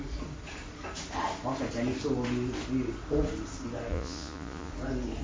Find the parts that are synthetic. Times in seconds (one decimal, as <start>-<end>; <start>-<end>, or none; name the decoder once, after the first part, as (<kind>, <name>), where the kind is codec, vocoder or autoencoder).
3.9-4.7 (vocoder, Vocos)